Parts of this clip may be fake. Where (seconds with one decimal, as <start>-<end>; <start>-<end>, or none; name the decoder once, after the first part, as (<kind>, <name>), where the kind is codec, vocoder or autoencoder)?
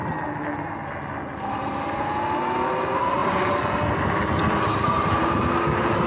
none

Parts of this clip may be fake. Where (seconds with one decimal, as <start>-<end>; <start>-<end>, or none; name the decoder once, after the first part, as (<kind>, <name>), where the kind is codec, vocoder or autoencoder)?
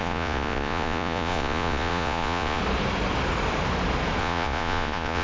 0.0-2.6 (vocoder, Vocos); 4.2-5.2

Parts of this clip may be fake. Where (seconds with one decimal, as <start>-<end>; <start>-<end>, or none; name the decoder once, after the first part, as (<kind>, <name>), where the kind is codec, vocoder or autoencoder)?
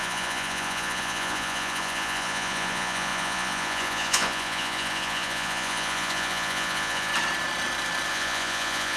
0.0-7.1 (vocoder, Vocos); 8.1-9.0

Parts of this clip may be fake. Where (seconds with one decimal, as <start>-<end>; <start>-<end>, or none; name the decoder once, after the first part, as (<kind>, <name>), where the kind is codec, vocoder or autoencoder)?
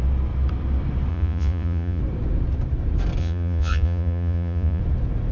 1.1-2.0 (vocoder, Vocos); 3.2-4.8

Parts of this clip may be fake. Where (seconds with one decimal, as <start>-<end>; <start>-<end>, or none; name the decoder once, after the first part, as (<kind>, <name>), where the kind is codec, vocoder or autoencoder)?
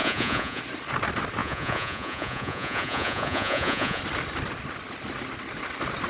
0.0-0.6 (vocoder, Vocos); 1.4-4.0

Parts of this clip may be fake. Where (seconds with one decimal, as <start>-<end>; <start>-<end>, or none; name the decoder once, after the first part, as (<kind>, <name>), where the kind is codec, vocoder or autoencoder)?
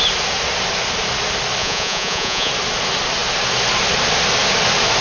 1.6-2.5 (vocoder, Vocos)